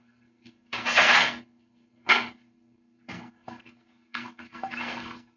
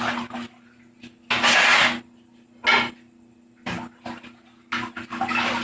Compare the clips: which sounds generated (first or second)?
first